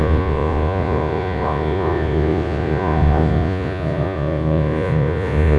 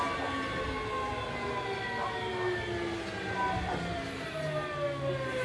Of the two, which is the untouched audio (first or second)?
second